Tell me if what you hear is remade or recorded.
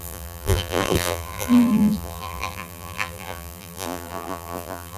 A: remade